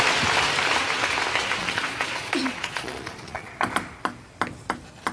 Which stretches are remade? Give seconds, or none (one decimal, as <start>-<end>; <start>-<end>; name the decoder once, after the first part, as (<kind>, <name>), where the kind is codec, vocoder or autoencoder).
1.6-3.5 (vocoder, Vocos)